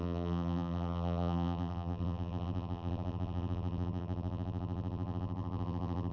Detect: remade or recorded remade